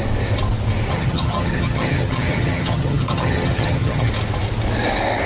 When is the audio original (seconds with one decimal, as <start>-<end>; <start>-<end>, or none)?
0.0-0.9; 4.1-5.3

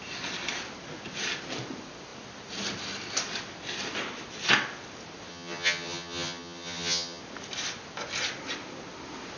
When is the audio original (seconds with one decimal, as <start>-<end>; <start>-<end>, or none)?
0.0-5.3; 7.2-9.4

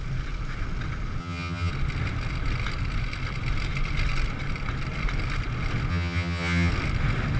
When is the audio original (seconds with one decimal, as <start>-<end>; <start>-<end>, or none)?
0.0-1.2; 1.7-5.9; 6.7-7.4

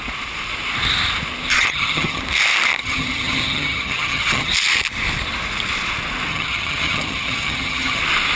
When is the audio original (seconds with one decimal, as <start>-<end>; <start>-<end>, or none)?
0.0-1.5; 2.2-2.8; 4.5-6.3; 8.0-8.4